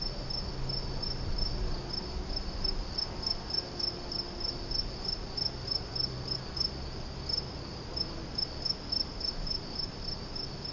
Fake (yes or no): no